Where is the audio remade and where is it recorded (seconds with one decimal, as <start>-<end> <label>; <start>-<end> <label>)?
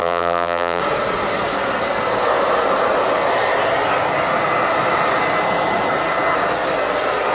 0.0-0.8 remade; 0.8-7.3 recorded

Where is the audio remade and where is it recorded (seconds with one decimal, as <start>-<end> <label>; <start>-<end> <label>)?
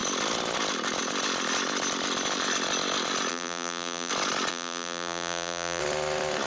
0.0-3.3 recorded; 3.3-4.1 remade; 4.1-4.5 recorded; 4.5-5.8 remade; 5.8-6.5 recorded